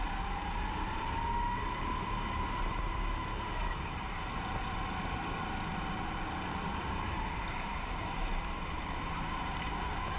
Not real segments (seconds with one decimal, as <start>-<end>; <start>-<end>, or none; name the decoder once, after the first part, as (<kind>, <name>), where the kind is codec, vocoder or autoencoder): 5.7-10.2 (vocoder, BigVGAN v2)